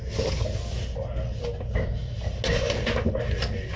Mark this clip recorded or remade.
recorded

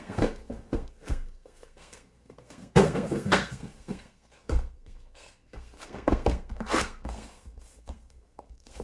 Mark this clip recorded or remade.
remade